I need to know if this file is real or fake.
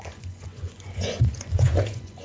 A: fake